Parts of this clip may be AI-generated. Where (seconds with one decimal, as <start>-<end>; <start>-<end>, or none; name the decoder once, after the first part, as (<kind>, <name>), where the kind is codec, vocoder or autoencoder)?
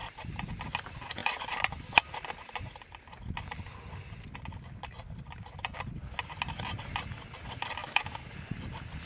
7.8-8.3 (autoencoder, DAC-VAE)